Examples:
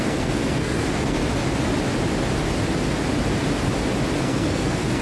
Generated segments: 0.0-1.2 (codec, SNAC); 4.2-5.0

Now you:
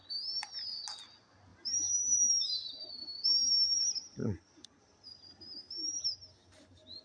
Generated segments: 1.5-2.6 (vocoder, BigVGAN v2); 4.2-5.2

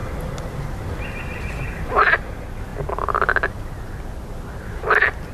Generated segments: none

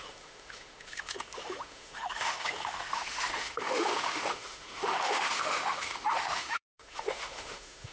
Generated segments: 0.0-7.9 (autoencoder, DAC-VAE)

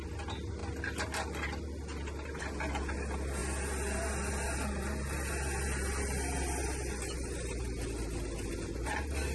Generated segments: none